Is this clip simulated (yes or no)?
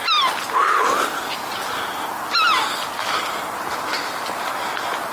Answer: no